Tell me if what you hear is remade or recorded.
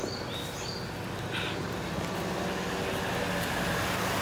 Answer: recorded